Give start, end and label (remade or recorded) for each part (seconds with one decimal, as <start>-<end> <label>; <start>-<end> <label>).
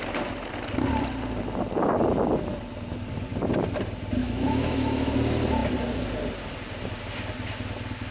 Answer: 0.0-4.2 recorded; 4.2-5.1 remade; 5.1-8.1 recorded